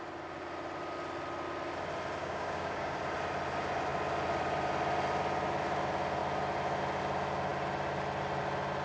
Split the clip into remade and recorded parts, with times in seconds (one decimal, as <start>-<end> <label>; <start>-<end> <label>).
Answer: 0.0-2.2 recorded; 2.2-3.0 remade; 3.0-8.8 recorded